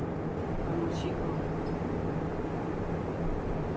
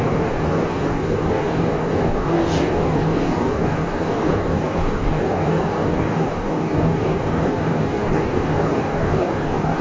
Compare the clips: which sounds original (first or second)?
first